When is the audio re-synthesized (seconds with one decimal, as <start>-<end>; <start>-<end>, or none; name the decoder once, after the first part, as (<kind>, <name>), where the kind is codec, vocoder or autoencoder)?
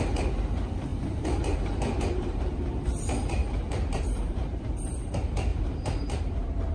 0.9-2.4 (vocoder, BigVGAN v2); 3.4-4.6; 5.5-6.7